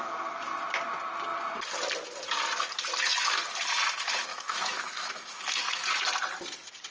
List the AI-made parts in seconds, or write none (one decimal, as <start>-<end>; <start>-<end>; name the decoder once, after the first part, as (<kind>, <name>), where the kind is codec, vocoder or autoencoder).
4.3-5.4 (autoencoder, DAC-VAE)